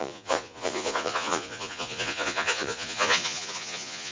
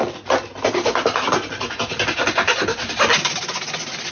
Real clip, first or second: second